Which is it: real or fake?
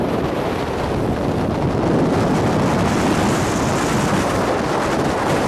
real